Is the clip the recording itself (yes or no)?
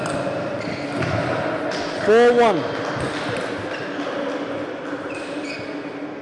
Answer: yes